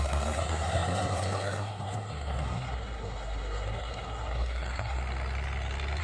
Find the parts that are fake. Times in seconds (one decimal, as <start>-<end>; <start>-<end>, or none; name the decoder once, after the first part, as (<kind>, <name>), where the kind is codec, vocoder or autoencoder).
0.0-5.0 (codec, SNAC)